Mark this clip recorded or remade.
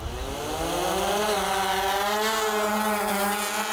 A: recorded